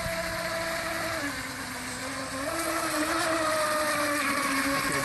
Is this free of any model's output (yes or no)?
yes